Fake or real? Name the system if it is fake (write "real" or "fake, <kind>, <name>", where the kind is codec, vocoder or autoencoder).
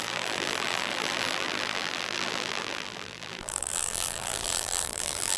fake, vocoder, BigVGAN v2